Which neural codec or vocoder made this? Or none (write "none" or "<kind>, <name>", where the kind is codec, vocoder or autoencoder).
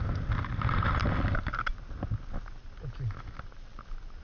none